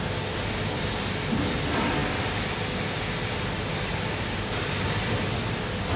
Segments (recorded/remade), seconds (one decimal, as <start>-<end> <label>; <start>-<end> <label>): 0.0-6.0 recorded